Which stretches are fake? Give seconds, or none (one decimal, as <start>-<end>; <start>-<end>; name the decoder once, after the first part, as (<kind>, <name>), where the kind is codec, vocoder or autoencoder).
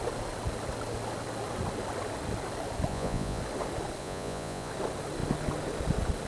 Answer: 2.9-3.4 (vocoder, Vocos); 4.0-4.7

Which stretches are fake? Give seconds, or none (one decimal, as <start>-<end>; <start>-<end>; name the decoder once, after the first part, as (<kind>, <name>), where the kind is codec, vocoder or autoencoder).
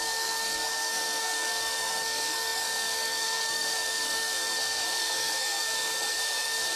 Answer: 0.0-6.8 (codec, SNAC)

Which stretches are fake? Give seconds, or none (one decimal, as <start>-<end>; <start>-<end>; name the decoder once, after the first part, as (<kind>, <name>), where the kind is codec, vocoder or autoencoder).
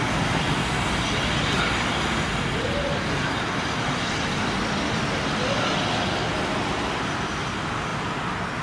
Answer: none